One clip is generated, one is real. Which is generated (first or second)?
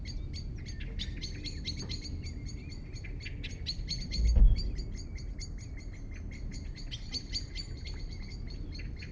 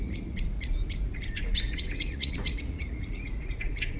second